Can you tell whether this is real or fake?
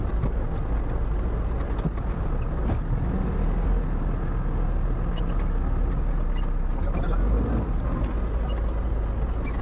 real